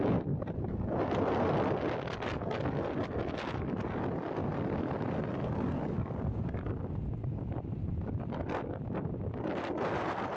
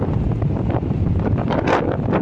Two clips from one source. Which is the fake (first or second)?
second